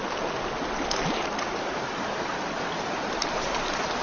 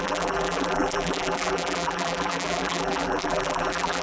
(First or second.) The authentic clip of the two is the first